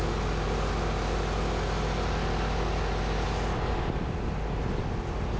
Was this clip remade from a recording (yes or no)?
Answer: no